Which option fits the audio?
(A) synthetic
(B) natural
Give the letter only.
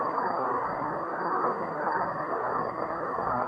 A